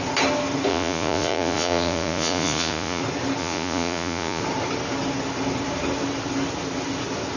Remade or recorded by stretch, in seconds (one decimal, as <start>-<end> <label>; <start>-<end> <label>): 0.0-0.7 recorded; 0.7-3.0 remade; 3.0-3.4 recorded; 3.4-4.4 remade; 4.4-7.4 recorded